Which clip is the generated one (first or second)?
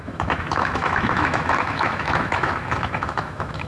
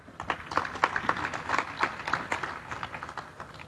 first